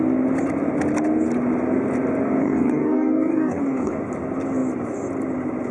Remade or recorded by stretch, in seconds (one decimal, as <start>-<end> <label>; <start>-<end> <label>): 0.0-2.4 recorded; 2.4-3.9 remade; 3.9-5.7 recorded